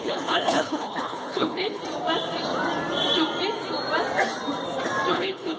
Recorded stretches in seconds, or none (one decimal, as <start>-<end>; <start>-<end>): 1.8-5.1